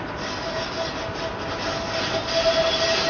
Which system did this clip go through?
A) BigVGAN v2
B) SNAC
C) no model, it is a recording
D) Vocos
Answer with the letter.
C